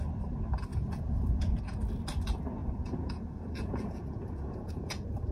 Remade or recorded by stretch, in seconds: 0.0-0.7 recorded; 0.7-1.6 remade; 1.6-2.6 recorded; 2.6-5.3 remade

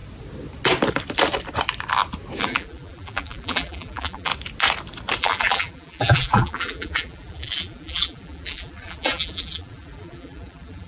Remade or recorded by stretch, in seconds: 0.0-2.4 recorded; 2.4-4.3 remade; 4.3-5.2 recorded; 5.2-10.9 remade

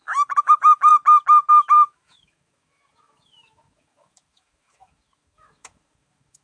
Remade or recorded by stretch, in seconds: 0.0-0.9 remade; 0.9-1.5 recorded; 1.5-6.4 remade

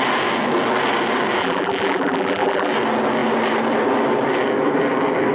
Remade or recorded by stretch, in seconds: 0.0-1.4 recorded; 1.4-2.7 remade; 2.7-5.3 recorded

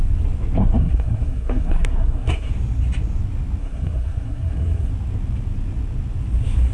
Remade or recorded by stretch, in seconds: 0.0-0.6 recorded; 0.6-2.5 remade; 2.5-3.6 recorded; 3.6-4.9 remade; 4.9-6.7 recorded